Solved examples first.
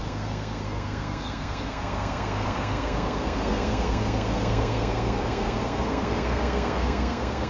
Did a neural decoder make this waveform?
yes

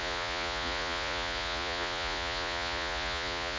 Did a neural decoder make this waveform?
yes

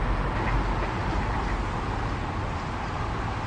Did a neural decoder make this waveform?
no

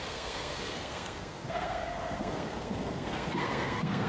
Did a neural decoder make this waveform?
yes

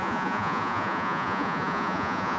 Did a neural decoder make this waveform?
yes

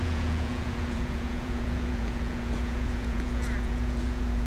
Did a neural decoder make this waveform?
yes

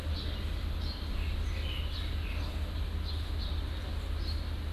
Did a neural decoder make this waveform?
no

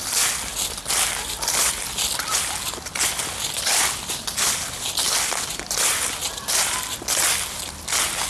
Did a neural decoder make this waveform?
no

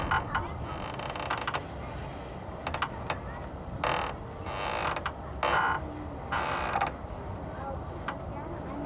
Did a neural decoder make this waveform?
no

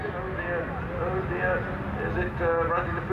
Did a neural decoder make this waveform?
no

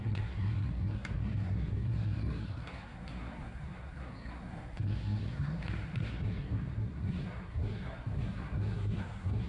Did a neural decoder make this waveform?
yes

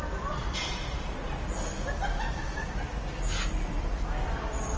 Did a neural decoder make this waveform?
no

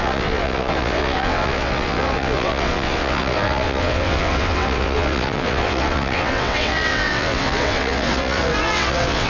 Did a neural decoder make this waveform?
yes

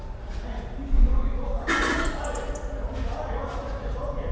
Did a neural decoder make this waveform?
no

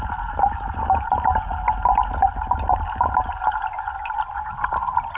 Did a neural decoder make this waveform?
no